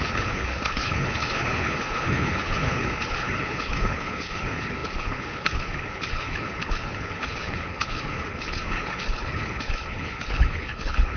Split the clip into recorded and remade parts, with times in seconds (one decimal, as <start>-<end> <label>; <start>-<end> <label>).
0.0-11.2 remade